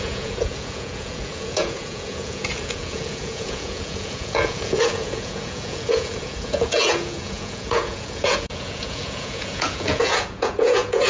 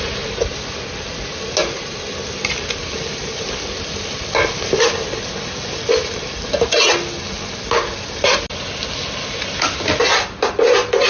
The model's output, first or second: first